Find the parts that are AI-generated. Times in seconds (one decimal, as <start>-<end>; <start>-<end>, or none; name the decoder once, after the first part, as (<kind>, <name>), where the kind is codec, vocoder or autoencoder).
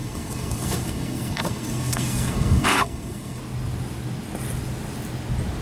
0.0-3.4 (codec, SNAC)